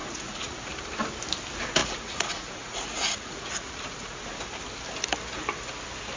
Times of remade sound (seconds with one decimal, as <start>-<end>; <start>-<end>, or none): 0.0-0.7; 1.8-4.2